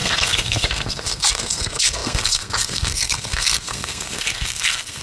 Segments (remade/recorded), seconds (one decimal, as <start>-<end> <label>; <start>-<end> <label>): 0.0-5.0 remade